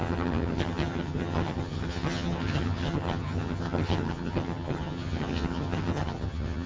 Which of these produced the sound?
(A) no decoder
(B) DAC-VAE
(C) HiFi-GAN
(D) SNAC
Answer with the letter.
C